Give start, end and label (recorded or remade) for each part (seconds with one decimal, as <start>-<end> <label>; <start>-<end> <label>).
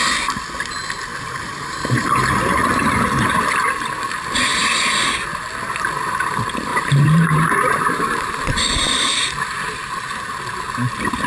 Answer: 0.0-1.1 recorded; 1.1-2.2 remade; 2.2-6.7 recorded; 6.7-8.3 remade; 8.3-11.3 recorded